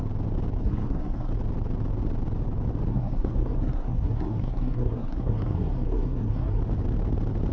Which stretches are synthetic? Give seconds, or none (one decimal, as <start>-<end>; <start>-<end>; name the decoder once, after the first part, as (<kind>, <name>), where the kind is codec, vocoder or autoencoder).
0.6-1.3 (codec, SNAC); 2.9-6.6

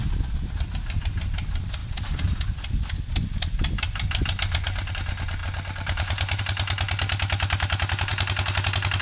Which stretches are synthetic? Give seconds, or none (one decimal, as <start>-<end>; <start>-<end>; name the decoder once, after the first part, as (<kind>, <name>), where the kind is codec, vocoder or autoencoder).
none

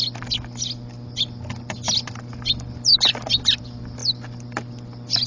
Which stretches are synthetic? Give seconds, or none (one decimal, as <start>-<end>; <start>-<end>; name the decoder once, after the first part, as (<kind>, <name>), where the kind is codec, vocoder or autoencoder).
none